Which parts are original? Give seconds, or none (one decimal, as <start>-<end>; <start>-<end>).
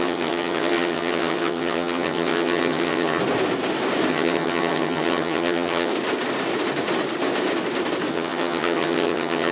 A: 3.2-4.1; 5.9-8.1